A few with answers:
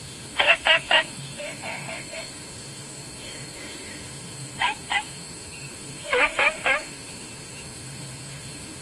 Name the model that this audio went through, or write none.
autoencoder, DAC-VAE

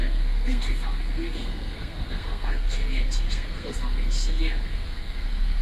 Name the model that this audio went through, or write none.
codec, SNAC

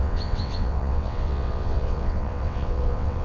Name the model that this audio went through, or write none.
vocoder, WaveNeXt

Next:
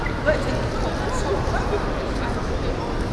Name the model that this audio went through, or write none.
none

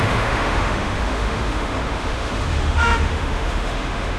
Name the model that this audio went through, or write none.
autoencoder, DAC-VAE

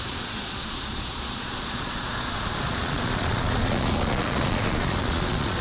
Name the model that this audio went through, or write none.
vocoder, Vocos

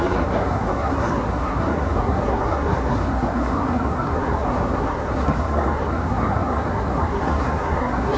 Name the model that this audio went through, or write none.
codec, SNAC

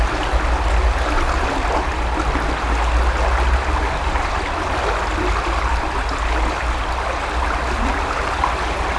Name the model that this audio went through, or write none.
none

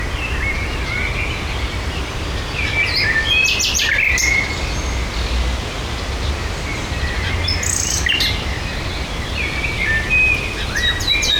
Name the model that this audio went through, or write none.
none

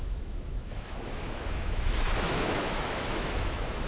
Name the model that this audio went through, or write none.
autoencoder, DAC-VAE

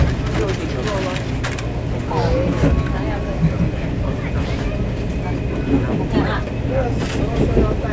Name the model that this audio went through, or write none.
none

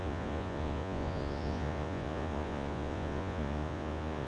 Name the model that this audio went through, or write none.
vocoder, Vocos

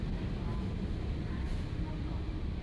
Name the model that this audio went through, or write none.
none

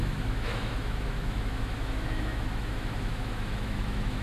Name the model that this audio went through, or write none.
autoencoder, DAC-VAE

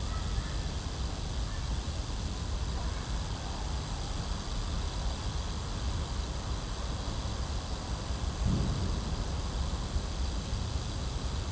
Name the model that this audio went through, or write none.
none